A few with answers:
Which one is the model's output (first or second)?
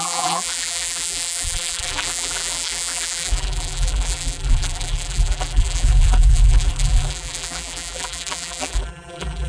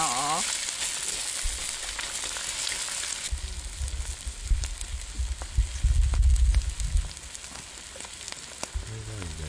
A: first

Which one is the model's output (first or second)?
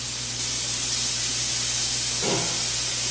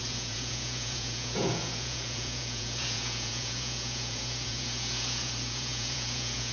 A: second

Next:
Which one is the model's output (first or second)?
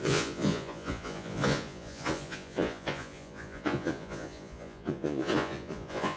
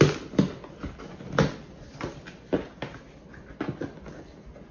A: first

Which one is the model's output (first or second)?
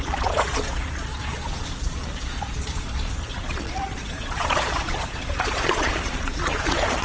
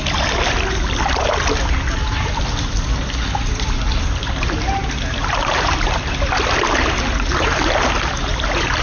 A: first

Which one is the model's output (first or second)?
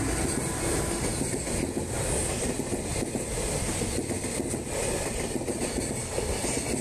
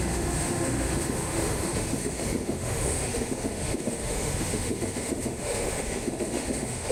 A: second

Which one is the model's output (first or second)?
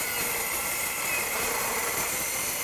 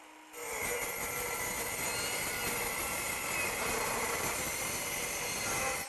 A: first